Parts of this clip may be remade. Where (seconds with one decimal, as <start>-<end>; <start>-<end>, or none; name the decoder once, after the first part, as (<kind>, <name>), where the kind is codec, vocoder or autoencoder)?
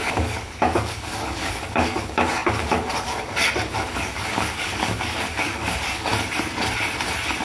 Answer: 0.0-6.1 (codec, DAC)